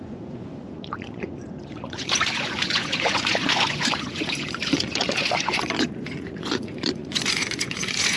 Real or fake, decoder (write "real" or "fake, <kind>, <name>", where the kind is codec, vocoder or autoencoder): fake, vocoder, Vocos